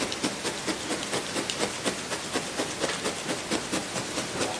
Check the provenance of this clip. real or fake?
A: real